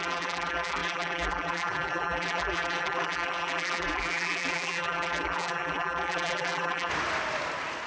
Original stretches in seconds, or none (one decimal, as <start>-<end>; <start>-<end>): 6.9-7.9